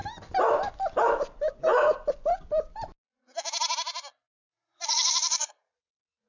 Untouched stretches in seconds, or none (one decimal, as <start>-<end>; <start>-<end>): 0.0-4.5